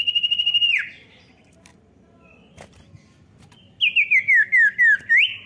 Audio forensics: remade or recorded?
recorded